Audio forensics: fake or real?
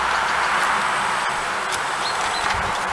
real